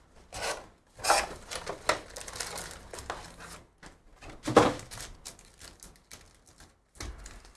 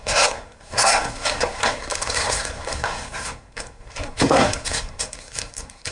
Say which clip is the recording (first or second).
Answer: first